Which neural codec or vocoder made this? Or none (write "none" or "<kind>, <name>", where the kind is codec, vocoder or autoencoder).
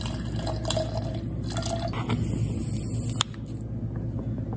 none